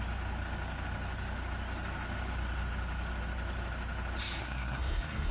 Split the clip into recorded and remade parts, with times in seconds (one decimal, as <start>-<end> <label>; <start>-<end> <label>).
0.0-4.4 recorded; 4.4-5.3 remade